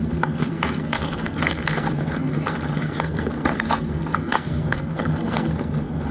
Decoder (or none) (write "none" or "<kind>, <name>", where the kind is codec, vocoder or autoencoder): codec, SNAC